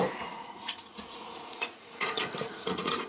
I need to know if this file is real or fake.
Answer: fake